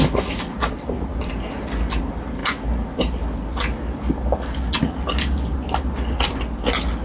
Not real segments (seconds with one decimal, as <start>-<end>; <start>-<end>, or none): none